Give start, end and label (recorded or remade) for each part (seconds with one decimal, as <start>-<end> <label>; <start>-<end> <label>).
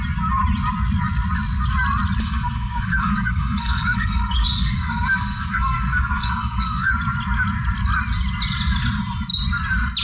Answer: 0.0-2.2 recorded; 2.2-6.9 remade; 6.9-10.0 recorded